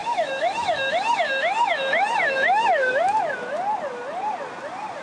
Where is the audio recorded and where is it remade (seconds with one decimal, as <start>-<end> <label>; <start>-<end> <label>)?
0.0-3.0 remade; 3.0-5.0 recorded